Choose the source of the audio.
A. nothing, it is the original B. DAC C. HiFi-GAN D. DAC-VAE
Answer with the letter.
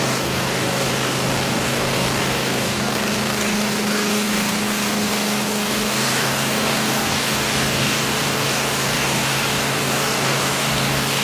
B